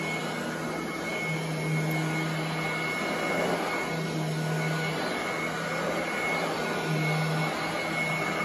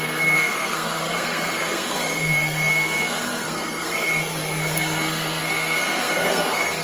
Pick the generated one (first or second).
second